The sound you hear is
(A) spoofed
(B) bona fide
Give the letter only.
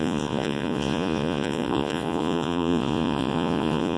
A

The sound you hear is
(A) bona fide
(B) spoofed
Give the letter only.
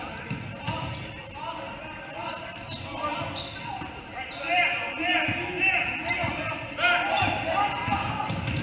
A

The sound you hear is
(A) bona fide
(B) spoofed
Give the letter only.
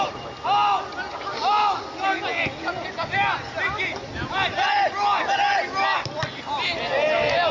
A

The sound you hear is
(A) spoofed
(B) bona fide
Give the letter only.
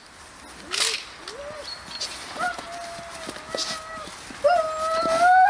B